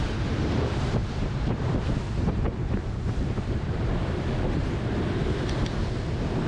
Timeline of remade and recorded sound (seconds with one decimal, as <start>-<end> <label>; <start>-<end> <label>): 0.0-5.2 remade; 5.2-6.5 recorded